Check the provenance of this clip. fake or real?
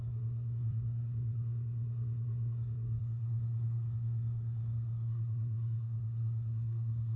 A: fake